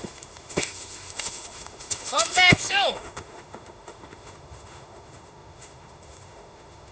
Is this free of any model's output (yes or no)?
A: no